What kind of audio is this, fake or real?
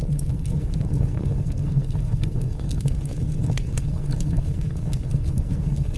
fake